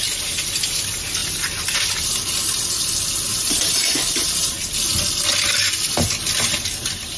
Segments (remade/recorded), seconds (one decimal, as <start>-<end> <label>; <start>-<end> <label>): 0.0-3.3 recorded; 3.3-4.8 remade; 4.8-7.2 recorded